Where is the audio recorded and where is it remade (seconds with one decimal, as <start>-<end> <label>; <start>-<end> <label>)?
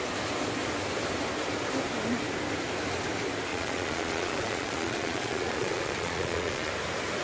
0.0-3.5 recorded; 3.5-6.7 remade; 6.7-7.2 recorded